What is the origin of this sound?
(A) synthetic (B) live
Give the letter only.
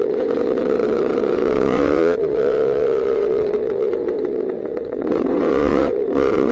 A